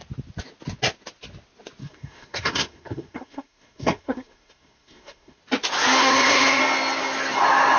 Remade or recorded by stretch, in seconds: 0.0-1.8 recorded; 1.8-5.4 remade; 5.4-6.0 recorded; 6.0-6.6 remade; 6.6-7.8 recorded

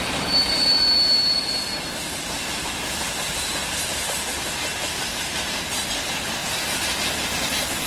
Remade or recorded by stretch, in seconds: 0.0-7.9 recorded

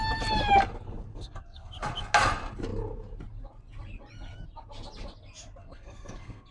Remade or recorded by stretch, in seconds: 0.0-1.1 recorded; 1.1-1.7 remade; 1.7-5.6 recorded; 5.6-6.5 remade